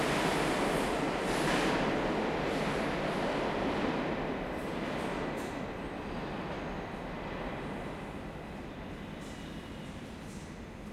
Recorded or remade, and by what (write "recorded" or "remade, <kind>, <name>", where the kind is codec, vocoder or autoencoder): recorded